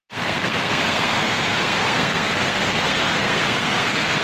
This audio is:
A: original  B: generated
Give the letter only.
B